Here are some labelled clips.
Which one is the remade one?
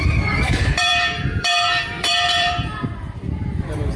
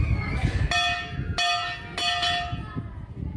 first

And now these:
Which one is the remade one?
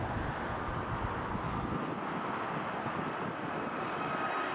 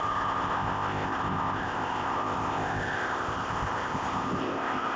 second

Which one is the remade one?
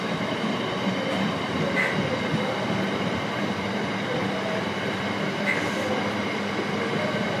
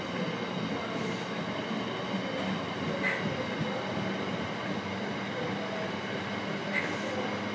first